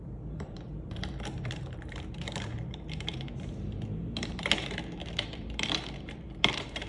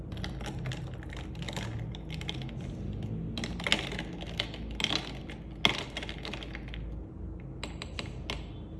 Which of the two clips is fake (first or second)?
first